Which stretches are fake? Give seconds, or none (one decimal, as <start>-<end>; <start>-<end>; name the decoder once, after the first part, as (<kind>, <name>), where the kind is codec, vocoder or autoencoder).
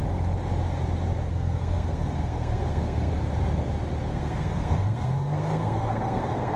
1.3-3.1 (codec, SNAC); 4.1-6.6